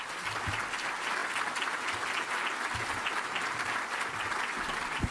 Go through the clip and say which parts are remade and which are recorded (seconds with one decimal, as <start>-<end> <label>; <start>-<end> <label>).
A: 0.0-5.1 recorded